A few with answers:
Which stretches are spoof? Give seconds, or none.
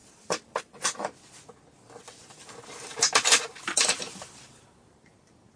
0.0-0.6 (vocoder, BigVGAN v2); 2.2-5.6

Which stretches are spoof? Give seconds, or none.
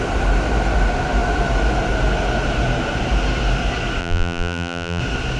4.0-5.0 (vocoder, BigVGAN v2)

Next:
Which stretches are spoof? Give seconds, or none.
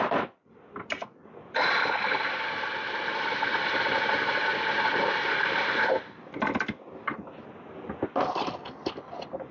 0.0-4.5 (vocoder, BigVGAN v2); 5.0-9.5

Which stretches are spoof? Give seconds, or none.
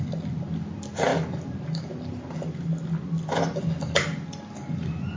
none